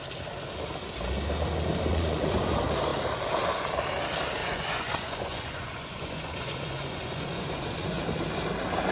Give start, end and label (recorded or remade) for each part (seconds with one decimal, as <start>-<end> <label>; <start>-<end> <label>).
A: 0.0-1.9 recorded; 1.9-2.4 remade; 2.4-4.4 recorded; 4.4-8.0 remade; 8.0-8.9 recorded